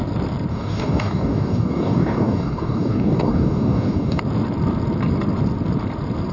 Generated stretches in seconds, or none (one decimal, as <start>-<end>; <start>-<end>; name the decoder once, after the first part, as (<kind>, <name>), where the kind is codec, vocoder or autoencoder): 0.5-4.2 (codec, DAC)